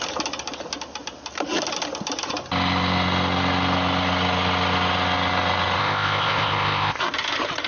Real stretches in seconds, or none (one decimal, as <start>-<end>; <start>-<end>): 0.0-5.8; 7.0-7.7